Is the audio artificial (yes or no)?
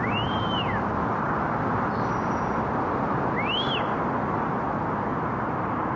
no